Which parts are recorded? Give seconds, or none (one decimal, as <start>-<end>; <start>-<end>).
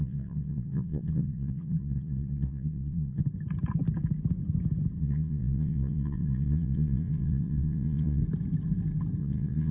3.2-5.0; 8.2-9.2